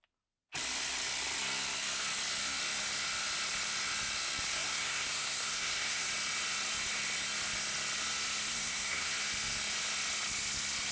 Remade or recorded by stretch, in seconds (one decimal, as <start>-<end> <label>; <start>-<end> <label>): 0.0-4.5 recorded; 4.5-6.1 remade; 6.1-8.5 recorded; 8.5-9.1 remade; 9.1-10.9 recorded